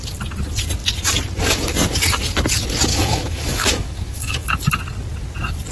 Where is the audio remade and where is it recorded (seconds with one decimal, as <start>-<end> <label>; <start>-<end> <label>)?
0.0-2.9 recorded; 2.9-4.6 remade; 4.6-5.7 recorded